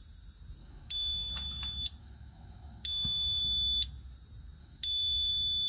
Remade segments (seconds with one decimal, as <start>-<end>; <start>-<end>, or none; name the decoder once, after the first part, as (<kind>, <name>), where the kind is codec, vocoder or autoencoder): 0.6-1.3 (autoencoder, DAC-VAE); 2.0-3.4; 4.6-5.3